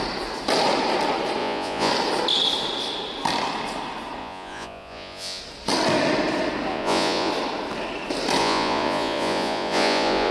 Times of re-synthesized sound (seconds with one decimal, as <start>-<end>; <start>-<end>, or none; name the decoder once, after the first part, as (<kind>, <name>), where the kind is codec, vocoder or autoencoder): 1.4-1.9 (vocoder, Vocos); 4.2-5.4; 6.7-7.3; 8.4-10.3